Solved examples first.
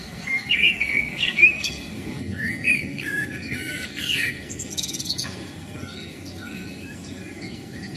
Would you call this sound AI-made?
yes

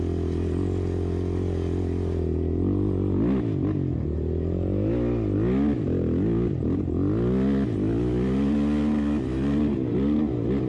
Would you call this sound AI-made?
no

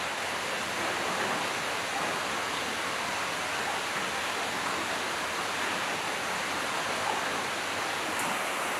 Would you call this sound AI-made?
no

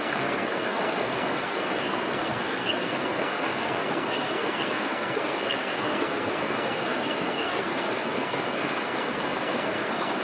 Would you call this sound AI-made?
yes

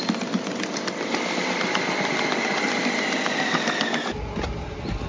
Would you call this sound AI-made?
no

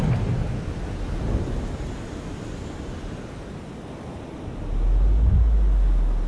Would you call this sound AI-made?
no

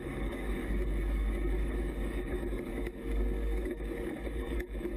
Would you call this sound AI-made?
yes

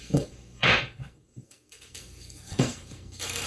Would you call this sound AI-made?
yes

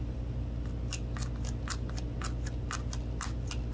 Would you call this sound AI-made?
no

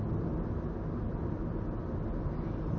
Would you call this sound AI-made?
no